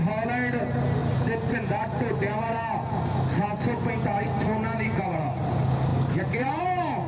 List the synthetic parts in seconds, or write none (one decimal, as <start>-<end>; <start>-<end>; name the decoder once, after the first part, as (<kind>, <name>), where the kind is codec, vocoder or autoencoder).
5.9-6.6 (vocoder, BigVGAN v2)